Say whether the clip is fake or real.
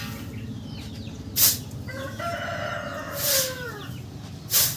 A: real